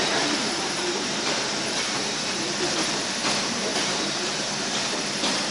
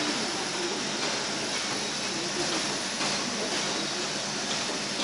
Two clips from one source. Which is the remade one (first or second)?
first